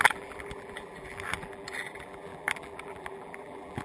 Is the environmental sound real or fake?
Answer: fake